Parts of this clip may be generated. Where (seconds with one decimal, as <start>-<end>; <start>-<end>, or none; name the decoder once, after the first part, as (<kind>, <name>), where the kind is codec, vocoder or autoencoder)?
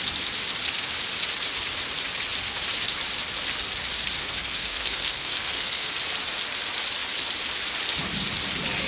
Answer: 4.2-5.9 (codec, SNAC)